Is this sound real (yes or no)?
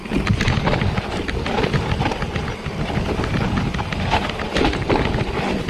yes